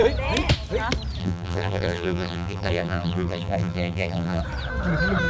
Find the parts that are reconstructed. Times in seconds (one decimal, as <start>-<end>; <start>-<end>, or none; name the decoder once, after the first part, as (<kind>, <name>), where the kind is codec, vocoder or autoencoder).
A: 1.2-4.4 (vocoder, BigVGAN v2)